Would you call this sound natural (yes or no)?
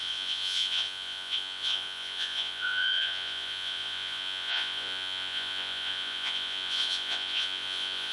no